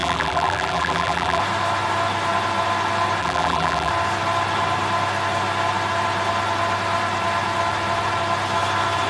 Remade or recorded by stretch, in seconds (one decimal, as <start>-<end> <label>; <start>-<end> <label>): 0.0-1.4 remade; 1.4-3.2 recorded; 3.2-3.9 remade; 3.9-9.1 recorded

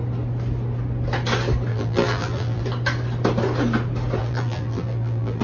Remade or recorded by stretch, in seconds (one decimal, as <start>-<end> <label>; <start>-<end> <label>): 0.0-1.7 recorded; 1.7-2.6 remade; 2.6-4.2 recorded; 4.2-5.4 remade

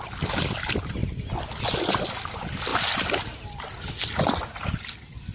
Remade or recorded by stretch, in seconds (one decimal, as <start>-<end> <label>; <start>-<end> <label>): 0.0-5.3 recorded

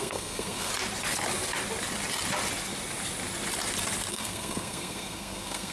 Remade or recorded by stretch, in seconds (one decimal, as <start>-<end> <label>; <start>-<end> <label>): 0.0-0.7 remade; 0.7-4.1 recorded; 4.1-5.7 remade